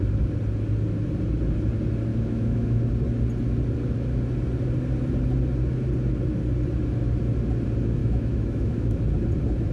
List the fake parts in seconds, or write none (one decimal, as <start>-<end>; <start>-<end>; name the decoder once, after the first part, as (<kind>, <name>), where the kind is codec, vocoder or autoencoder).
2.1-2.8 (autoencoder, DAC-VAE); 8.0-9.0